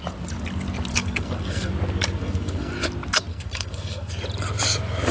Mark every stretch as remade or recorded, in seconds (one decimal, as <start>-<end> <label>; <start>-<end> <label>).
0.0-0.9 recorded; 0.9-1.7 remade; 1.7-2.2 recorded; 2.2-2.7 remade; 2.7-3.3 recorded; 3.3-4.1 remade; 4.1-5.1 recorded